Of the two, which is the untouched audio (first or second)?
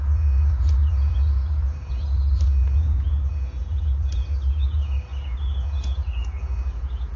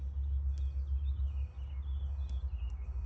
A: second